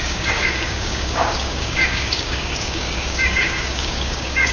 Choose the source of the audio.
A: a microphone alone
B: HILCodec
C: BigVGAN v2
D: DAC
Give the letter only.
D